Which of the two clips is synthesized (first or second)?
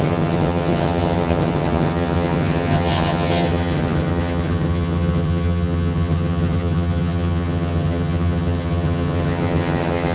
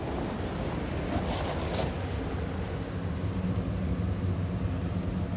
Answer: first